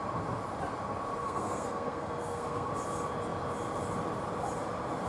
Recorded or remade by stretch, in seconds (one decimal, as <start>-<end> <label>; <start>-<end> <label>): 0.0-1.2 recorded; 1.2-2.7 remade; 2.7-5.1 recorded